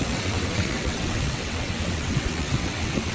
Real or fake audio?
fake